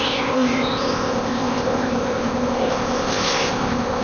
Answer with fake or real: fake